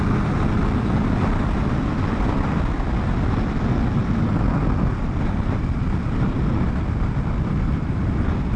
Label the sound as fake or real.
real